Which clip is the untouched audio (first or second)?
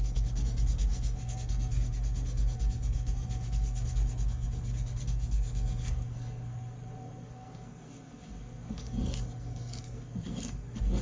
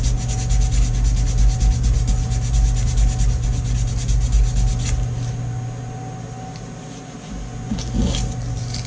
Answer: second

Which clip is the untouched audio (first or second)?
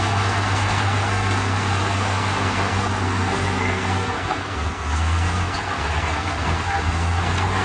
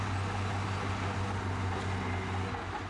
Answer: second